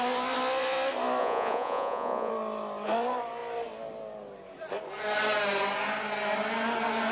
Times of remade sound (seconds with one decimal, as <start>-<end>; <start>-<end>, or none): 1.2-2.3